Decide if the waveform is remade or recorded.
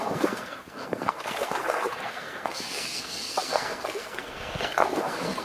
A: remade